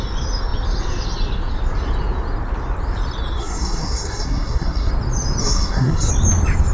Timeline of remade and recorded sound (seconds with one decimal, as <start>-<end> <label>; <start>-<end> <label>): 0.0-3.4 recorded; 3.4-4.9 remade; 4.9-5.4 recorded; 5.4-6.1 remade; 6.1-6.7 recorded